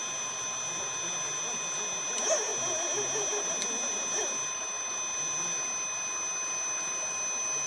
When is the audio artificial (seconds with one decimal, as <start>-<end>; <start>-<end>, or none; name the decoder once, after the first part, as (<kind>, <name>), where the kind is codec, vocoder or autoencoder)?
none